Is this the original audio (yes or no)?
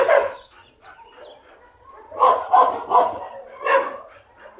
yes